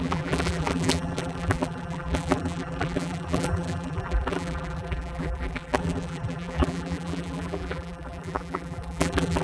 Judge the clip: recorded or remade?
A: remade